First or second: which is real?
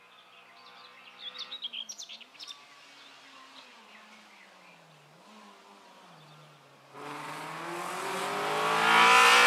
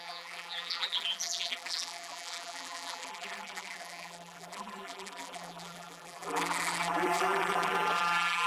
first